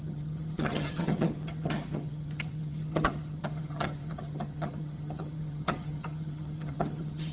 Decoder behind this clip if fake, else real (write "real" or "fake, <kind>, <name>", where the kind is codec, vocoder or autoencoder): fake, vocoder, HiFi-GAN